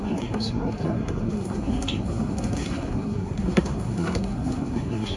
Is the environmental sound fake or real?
fake